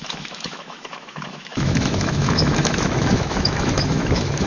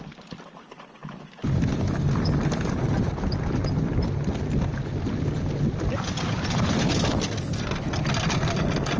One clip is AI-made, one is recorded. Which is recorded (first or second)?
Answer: second